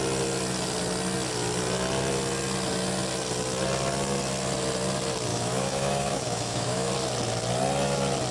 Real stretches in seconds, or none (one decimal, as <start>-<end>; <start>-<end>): 0.0-5.3; 6.9-8.3